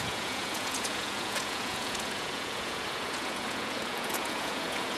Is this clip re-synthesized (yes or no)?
yes